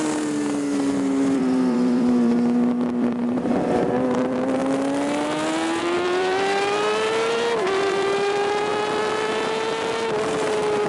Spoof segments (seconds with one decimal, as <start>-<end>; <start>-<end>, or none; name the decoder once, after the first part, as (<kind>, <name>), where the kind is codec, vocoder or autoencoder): 0.0-4.6 (vocoder, BigVGAN v2); 5.8-8.7; 10.2-10.9